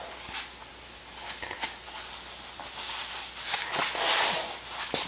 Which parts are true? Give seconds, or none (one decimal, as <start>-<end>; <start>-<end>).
0.0-5.1